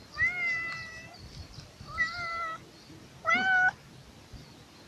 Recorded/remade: recorded